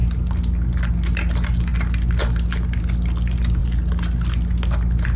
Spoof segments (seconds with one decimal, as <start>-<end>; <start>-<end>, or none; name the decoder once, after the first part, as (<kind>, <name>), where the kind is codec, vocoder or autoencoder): none